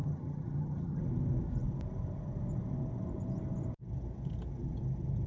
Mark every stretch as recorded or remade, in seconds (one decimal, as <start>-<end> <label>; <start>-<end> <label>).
0.0-1.0 remade; 1.0-5.3 recorded